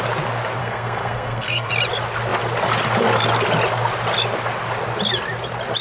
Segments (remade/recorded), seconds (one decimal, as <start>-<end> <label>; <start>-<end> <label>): 0.0-0.6 recorded; 0.6-1.7 remade; 1.7-5.8 recorded

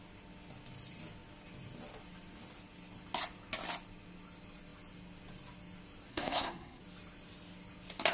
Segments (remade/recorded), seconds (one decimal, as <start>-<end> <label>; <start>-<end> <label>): 0.0-6.1 recorded; 6.1-6.8 remade; 6.8-8.1 recorded

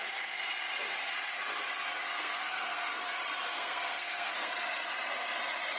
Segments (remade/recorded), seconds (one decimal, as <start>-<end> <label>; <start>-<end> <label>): 0.0-2.0 recorded; 2.0-2.9 remade; 2.9-3.5 recorded; 3.5-4.5 remade; 4.5-5.8 recorded

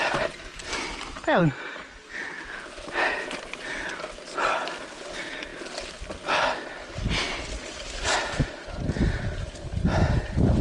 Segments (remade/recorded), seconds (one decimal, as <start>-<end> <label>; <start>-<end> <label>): 0.0-10.6 recorded

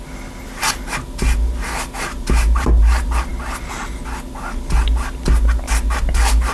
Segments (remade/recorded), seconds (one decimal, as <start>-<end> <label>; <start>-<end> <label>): 0.0-6.5 recorded

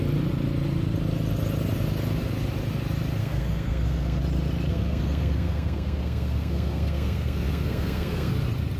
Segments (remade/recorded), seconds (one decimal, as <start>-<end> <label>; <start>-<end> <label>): 0.0-3.2 recorded; 3.2-4.2 remade; 4.2-4.7 recorded; 4.7-8.3 remade; 8.3-8.8 recorded

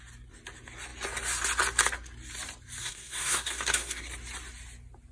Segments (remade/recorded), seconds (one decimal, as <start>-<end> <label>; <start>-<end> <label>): 0.0-2.8 recorded; 2.8-4.1 remade; 4.1-5.1 recorded

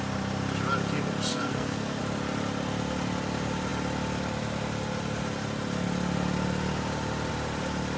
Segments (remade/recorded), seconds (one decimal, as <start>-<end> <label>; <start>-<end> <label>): 0.0-1.3 recorded; 1.3-2.0 remade; 2.0-8.0 recorded